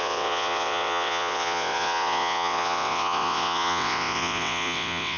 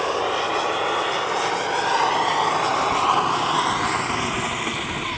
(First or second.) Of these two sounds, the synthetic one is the first